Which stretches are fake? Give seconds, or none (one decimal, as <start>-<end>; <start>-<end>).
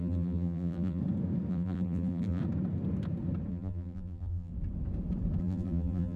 0.0-1.0; 1.5-2.4; 3.5-4.5; 5.4-6.2